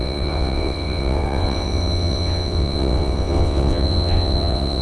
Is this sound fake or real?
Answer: fake